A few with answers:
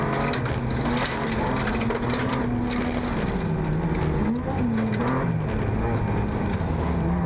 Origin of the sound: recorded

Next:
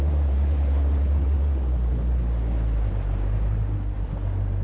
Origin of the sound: recorded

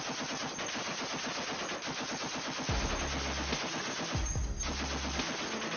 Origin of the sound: recorded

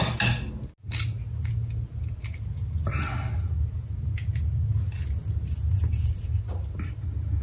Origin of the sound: recorded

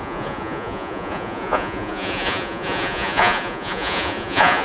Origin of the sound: remade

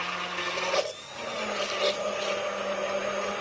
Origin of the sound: recorded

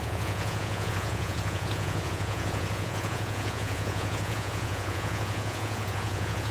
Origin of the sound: remade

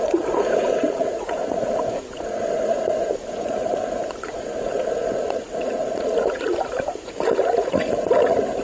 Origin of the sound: remade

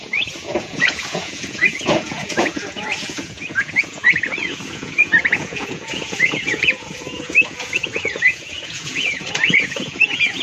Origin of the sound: remade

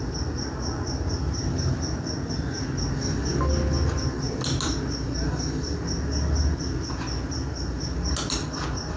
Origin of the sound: recorded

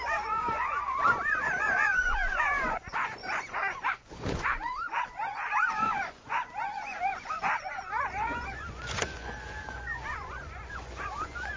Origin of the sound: remade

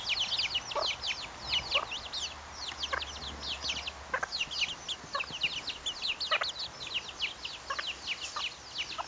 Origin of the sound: recorded